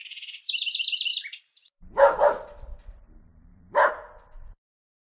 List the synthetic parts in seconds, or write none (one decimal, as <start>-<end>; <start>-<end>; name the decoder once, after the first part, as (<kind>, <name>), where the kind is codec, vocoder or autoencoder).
0.0-5.1 (vocoder, BigVGAN v2)

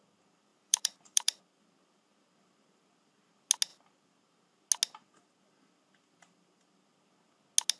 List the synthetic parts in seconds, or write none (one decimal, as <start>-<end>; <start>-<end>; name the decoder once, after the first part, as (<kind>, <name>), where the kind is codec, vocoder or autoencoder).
0.5-1.4 (vocoder, BigVGAN v2)